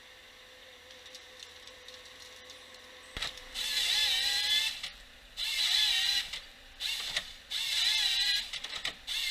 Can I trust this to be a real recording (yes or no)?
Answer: yes